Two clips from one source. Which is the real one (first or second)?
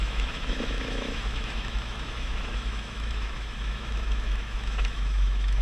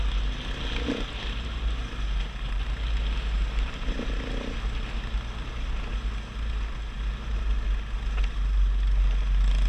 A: second